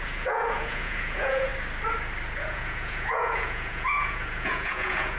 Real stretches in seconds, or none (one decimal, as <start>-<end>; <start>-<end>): 1.5-2.4